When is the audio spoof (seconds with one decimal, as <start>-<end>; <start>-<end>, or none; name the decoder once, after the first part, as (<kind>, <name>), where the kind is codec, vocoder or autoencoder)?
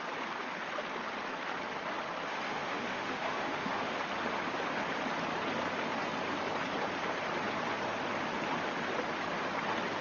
2.5-4.0 (autoencoder, DAC-VAE)